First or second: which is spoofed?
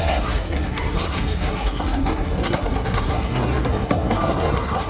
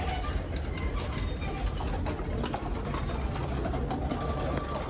first